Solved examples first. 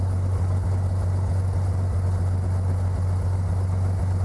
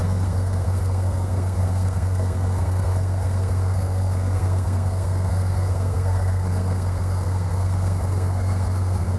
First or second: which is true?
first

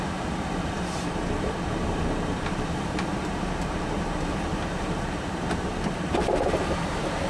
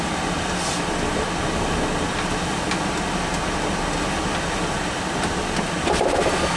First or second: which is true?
second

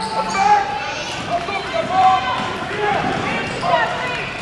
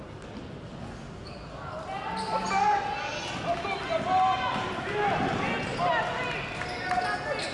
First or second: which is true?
second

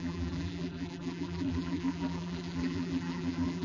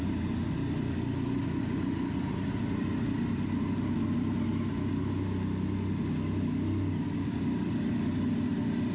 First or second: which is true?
second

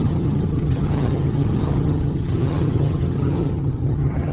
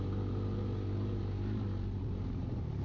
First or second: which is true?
second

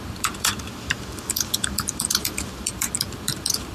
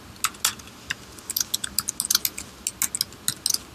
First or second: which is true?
second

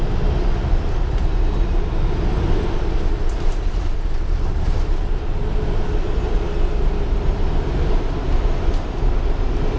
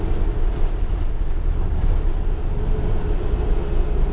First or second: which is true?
second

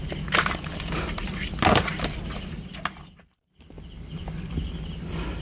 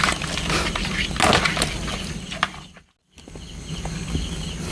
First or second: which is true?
second